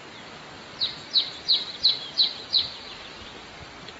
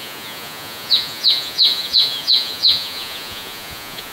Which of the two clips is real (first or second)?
first